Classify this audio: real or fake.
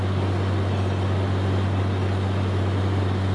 real